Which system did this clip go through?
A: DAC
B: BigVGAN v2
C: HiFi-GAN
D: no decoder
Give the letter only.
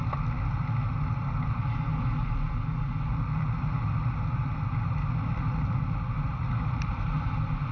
D